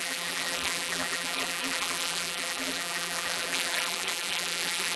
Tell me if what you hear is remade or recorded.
remade